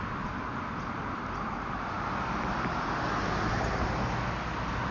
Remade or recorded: recorded